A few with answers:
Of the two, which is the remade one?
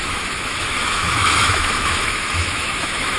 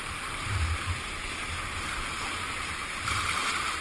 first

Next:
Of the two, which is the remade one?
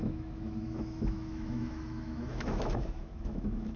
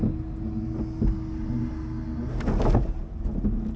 first